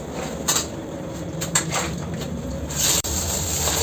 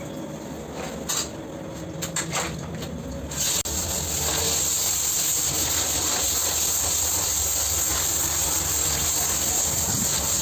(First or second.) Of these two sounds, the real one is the second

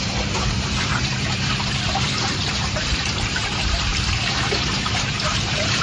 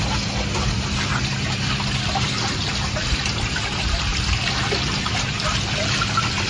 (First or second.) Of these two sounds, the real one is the second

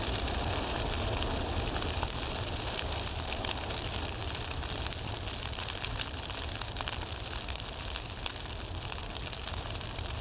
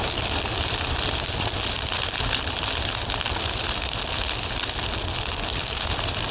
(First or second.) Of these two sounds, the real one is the second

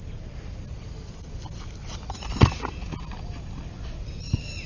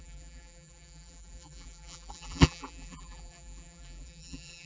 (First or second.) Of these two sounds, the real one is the first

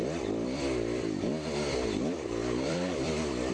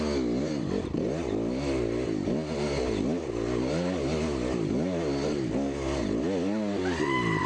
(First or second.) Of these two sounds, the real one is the second